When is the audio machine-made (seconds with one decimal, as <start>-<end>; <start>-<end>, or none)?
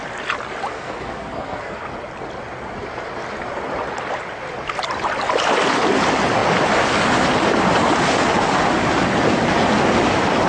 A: 0.7-1.8